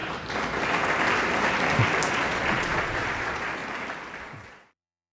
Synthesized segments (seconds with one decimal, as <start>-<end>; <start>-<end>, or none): 2.1-3.6; 4.2-5.1